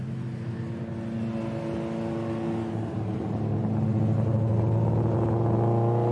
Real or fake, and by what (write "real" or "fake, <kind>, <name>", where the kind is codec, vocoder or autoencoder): real